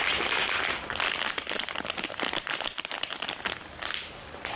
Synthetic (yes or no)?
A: no